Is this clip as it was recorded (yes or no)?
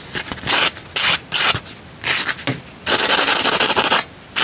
yes